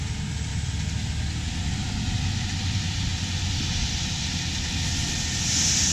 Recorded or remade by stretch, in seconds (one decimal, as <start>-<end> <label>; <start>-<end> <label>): 0.0-5.9 recorded